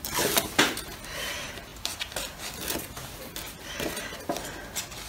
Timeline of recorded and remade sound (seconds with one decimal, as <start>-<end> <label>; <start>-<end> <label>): 0.0-5.1 recorded